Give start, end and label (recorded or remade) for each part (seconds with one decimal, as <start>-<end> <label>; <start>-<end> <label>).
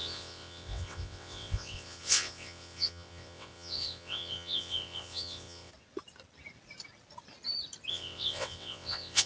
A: 0.0-5.7 remade; 5.7-7.9 recorded; 7.9-9.3 remade